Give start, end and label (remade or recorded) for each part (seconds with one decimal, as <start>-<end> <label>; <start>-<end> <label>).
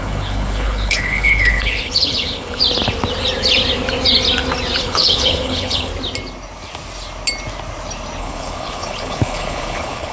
0.0-2.6 remade; 2.6-4.8 recorded; 4.8-5.9 remade; 5.9-8.2 recorded; 8.2-10.1 remade